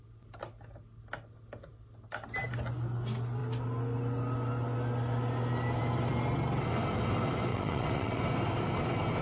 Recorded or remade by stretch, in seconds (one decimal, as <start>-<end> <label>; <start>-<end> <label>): 0.0-7.5 recorded; 7.5-8.2 remade; 8.2-9.2 recorded